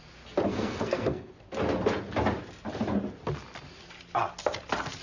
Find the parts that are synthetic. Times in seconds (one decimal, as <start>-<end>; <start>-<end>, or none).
0.5-1.3